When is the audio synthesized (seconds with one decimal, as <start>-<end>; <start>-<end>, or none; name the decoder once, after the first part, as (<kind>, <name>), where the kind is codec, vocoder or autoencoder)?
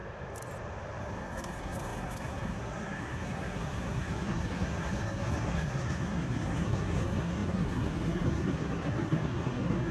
1.0-9.9 (codec, SNAC)